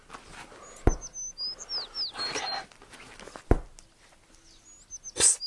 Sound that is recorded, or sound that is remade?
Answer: recorded